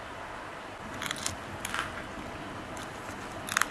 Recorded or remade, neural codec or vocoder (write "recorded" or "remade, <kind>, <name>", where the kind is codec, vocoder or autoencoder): recorded